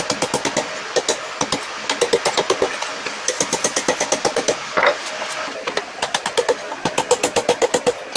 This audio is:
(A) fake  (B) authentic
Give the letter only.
B